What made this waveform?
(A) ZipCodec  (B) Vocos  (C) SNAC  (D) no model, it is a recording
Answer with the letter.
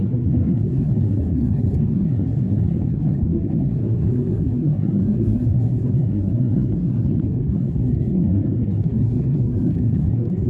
C